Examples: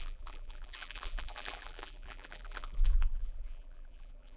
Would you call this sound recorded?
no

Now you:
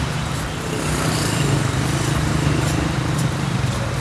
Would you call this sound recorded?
no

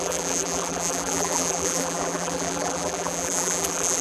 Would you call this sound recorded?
no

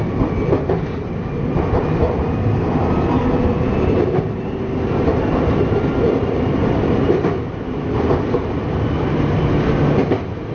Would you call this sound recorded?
yes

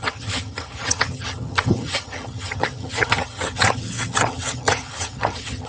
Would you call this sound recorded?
no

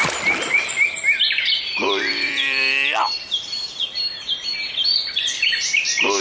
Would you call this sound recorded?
no